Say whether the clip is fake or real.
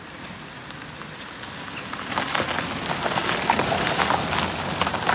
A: real